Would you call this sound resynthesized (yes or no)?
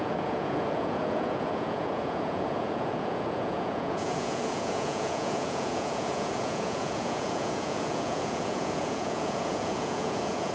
yes